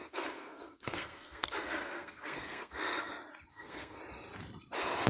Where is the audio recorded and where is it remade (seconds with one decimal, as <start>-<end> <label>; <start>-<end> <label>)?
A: 0.0-3.1 remade; 3.1-3.5 recorded; 3.5-4.0 remade; 4.0-5.1 recorded